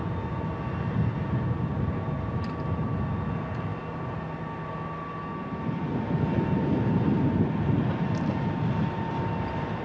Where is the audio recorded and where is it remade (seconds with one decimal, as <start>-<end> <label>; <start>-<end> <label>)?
0.0-9.8 recorded